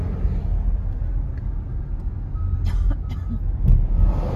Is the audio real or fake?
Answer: real